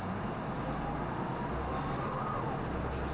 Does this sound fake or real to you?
real